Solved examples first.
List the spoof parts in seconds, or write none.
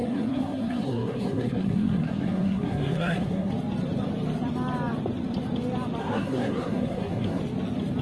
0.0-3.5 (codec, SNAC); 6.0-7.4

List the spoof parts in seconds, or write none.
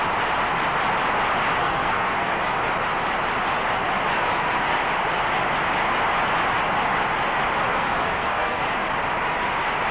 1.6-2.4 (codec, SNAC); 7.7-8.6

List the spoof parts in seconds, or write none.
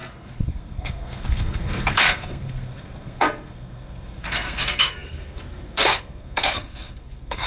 0.0-7.5 (codec, SNAC)